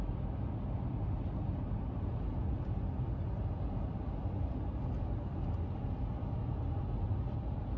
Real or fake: real